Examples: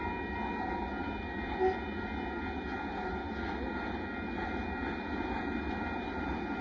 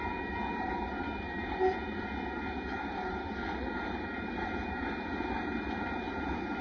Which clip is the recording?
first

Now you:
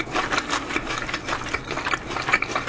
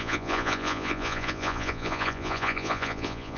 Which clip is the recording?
first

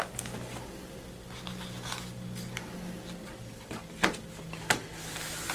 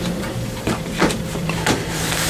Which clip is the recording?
first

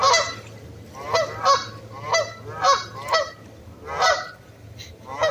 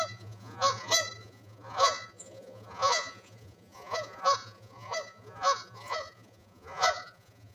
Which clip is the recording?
first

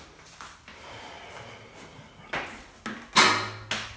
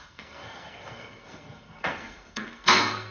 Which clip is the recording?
first